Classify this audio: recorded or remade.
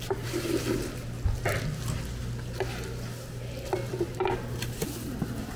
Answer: recorded